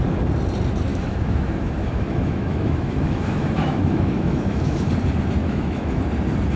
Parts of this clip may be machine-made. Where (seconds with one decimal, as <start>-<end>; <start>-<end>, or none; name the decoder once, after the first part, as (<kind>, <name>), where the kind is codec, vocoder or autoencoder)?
0.9-4.9 (autoencoder, DAC-VAE); 5.4-6.0